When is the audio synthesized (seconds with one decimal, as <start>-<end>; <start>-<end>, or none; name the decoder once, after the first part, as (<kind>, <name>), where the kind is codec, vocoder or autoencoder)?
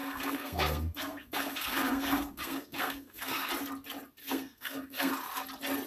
0.0-3.5 (codec, SNAC); 4.2-5.1